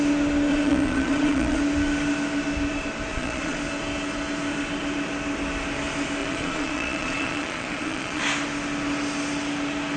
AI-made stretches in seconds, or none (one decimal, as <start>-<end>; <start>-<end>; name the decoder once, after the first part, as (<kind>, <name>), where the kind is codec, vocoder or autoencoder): 0.5-1.6 (vocoder, Vocos); 3.1-3.6; 6.2-8.2